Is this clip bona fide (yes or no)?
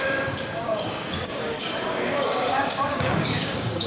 no